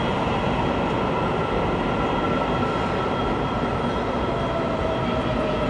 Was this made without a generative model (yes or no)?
yes